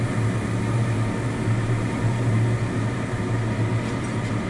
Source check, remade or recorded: recorded